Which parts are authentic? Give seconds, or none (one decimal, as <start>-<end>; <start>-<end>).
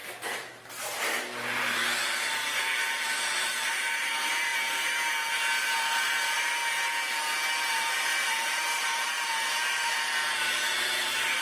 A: 4.5-5.8; 6.6-7.6